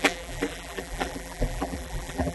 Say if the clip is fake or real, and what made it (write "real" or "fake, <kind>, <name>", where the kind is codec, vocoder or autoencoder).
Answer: fake, vocoder, BigVGAN v2